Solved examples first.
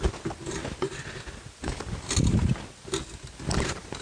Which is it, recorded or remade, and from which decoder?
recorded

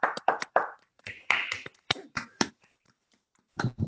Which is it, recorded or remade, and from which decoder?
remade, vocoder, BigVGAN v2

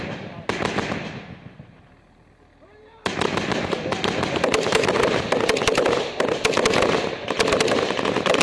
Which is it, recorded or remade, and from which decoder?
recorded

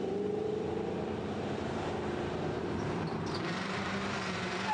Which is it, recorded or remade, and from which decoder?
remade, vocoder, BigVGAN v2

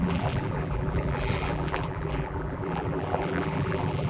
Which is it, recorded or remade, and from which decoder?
remade, vocoder, BigVGAN v2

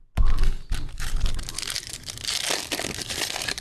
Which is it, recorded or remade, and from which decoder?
recorded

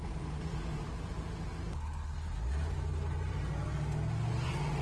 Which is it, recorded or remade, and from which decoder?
recorded